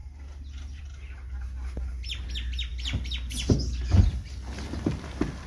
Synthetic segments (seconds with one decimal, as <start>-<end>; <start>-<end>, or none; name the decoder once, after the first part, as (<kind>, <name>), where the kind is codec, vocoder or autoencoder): 0.0-0.8 (vocoder, BigVGAN v2)